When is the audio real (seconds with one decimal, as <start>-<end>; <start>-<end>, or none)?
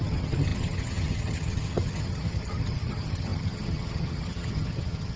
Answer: none